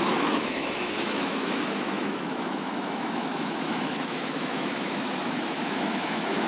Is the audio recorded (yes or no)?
no